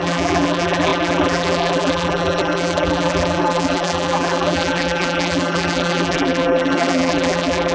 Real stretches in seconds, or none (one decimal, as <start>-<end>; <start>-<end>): none